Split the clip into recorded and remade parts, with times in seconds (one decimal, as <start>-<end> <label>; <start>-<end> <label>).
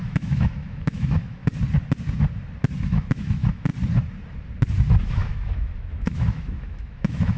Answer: 0.0-1.4 remade; 1.4-2.9 recorded; 2.9-3.7 remade; 3.7-5.0 recorded; 5.0-7.4 remade